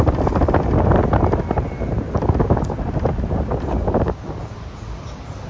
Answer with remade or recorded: recorded